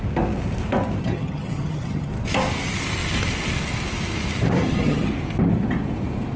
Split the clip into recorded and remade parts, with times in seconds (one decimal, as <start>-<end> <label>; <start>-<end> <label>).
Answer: 0.0-1.0 recorded; 1.0-2.1 remade; 2.1-4.6 recorded; 4.6-5.1 remade; 5.1-6.4 recorded